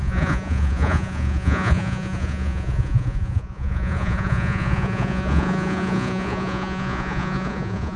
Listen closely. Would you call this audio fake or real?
fake